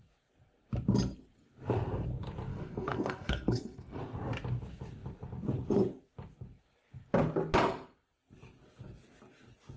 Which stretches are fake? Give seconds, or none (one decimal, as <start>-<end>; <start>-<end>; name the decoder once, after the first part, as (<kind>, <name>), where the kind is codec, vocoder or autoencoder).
2.5-4.0 (codec, SNAC)